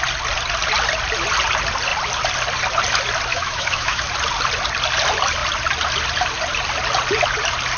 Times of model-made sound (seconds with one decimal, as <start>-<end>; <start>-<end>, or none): 3.3-4.1